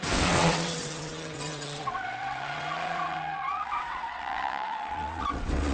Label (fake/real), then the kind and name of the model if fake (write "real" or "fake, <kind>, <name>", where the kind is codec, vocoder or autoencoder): fake, vocoder, WaveNeXt